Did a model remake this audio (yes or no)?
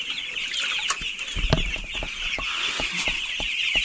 no